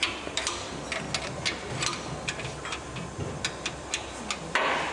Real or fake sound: real